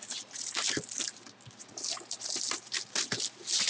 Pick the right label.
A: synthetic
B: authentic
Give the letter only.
B